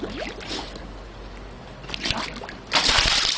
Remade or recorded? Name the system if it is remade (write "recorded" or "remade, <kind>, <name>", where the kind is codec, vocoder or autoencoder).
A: recorded